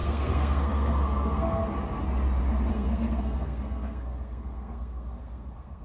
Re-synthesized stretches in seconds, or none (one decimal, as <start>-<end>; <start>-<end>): 0.0-1.6; 2.7-5.8